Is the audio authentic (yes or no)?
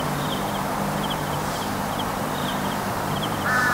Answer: no